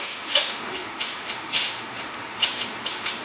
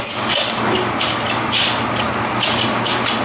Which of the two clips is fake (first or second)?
first